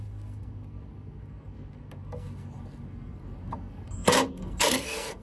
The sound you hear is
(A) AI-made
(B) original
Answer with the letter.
A